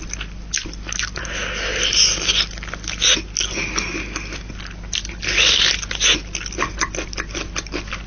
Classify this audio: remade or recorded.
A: recorded